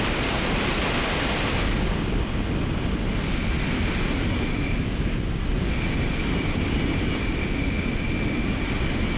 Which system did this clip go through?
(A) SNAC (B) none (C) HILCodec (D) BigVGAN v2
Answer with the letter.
B